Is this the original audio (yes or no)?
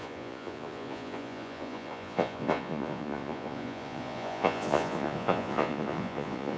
no